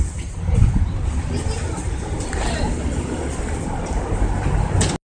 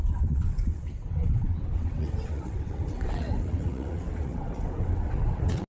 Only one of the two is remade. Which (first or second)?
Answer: second